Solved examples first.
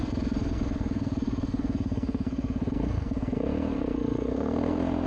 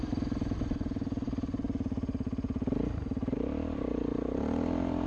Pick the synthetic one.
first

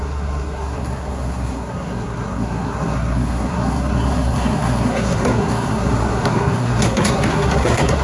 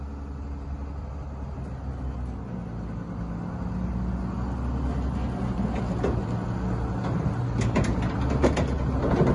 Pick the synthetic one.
first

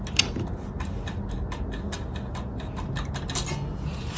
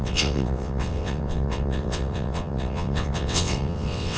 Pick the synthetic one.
second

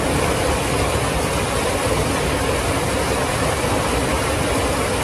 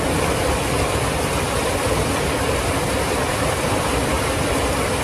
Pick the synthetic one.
second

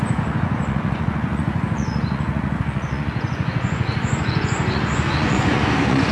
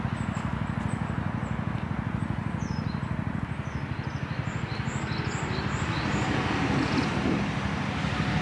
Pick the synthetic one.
first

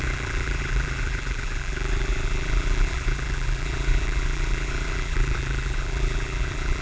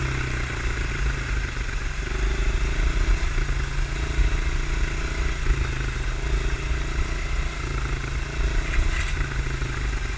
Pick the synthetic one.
first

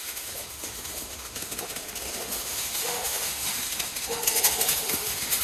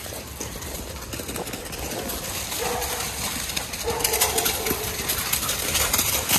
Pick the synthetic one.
first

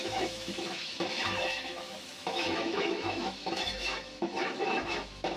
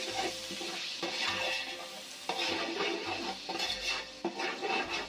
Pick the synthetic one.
first